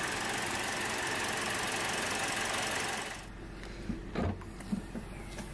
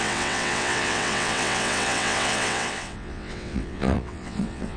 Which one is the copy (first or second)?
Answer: second